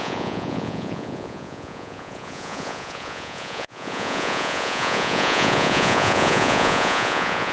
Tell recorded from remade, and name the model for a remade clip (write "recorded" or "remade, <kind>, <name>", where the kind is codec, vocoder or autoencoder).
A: remade, vocoder, Vocos